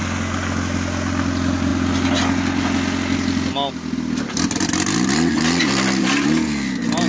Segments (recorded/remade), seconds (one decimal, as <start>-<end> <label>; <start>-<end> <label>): 0.0-7.1 recorded